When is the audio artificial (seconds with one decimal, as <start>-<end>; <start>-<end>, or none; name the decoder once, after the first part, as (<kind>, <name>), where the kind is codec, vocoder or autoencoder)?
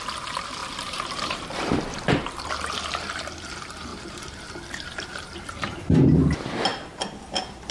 0.6-2.5 (vocoder, BigVGAN v2); 3.9-6.2